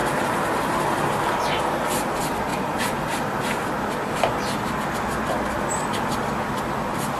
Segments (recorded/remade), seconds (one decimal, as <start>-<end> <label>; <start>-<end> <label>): 0.0-1.4 remade; 1.4-2.5 recorded; 2.5-3.8 remade; 3.8-7.2 recorded